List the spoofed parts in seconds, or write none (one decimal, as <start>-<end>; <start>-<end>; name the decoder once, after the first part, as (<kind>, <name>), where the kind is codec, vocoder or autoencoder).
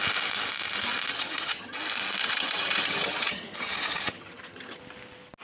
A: 1.1-1.8 (vocoder, HiFi-GAN); 2.2-4.8